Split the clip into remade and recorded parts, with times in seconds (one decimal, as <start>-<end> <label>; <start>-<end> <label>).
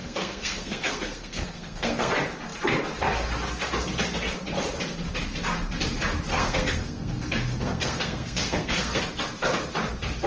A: 0.0-2.1 remade; 2.1-6.3 recorded; 6.3-9.0 remade; 9.0-10.3 recorded